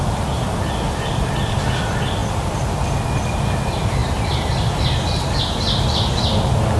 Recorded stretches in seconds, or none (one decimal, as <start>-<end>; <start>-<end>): 0.0-6.8

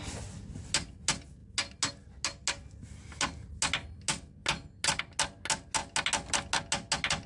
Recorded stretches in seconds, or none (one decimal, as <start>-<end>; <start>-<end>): 0.0-7.3

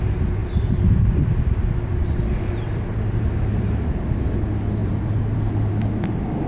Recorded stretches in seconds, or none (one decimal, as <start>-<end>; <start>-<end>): 0.0-0.4; 4.3-4.8; 5.7-6.5

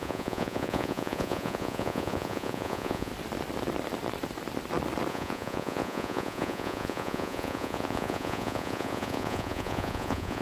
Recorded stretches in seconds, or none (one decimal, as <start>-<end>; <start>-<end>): 3.1-5.1

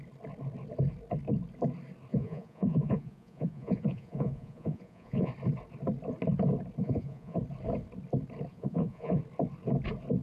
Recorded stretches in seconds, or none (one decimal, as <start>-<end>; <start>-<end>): 0.0-2.1; 5.3-6.8; 7.4-8.5; 9.2-10.2

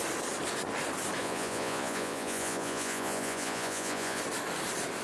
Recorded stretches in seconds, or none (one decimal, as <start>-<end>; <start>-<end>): 0.0-1.2; 4.2-5.0

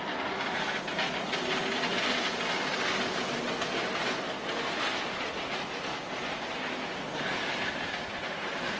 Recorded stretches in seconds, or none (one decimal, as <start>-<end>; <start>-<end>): 0.0-8.8